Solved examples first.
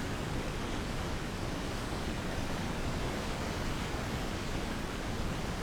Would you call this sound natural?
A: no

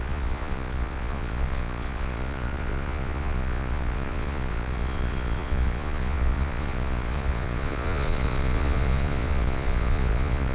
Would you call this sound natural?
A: no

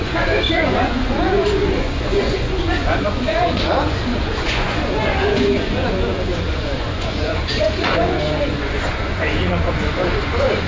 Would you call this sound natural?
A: no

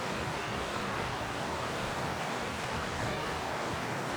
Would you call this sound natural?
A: no